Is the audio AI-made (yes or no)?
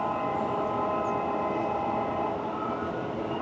no